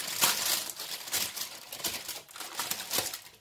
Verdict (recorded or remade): recorded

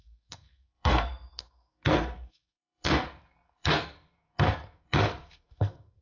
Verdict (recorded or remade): remade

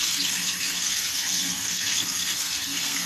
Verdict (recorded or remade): remade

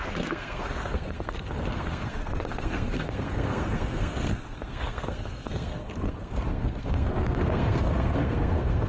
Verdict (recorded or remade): remade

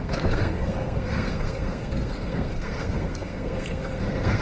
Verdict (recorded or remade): remade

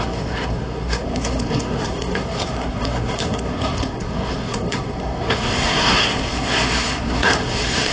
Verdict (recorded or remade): remade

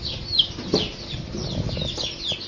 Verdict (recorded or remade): recorded